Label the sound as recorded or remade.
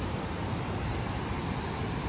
recorded